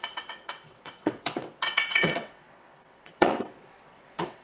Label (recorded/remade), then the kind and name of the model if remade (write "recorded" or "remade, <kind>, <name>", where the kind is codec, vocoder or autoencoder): remade, vocoder, WaveNeXt